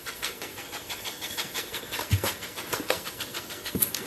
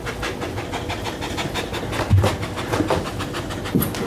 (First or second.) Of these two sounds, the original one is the second